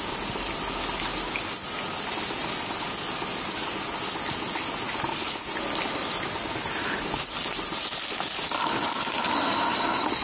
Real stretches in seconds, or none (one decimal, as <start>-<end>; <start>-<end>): 0.0-10.2